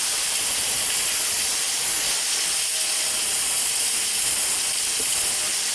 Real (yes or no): yes